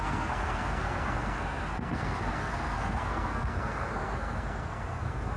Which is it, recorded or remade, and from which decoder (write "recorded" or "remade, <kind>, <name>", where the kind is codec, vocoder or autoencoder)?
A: remade, codec, SNAC